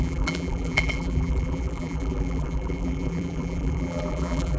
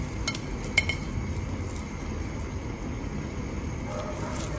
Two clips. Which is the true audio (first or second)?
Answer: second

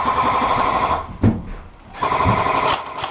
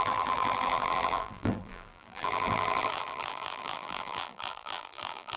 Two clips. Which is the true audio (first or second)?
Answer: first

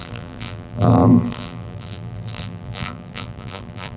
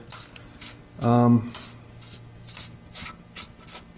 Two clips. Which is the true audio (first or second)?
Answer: second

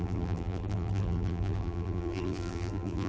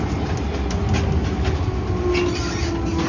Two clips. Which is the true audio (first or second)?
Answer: second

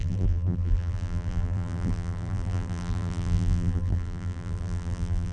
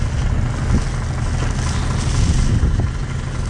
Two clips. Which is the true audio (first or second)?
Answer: second